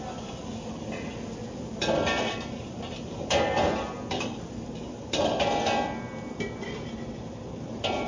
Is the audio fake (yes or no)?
no